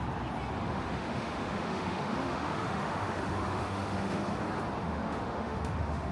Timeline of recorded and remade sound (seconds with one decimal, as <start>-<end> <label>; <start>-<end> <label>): 0.0-0.6 recorded; 0.6-4.3 remade; 4.3-4.8 recorded; 4.8-6.1 remade